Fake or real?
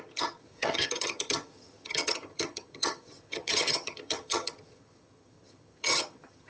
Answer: fake